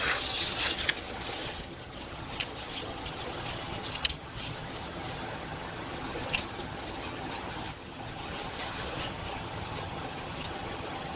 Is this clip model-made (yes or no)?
yes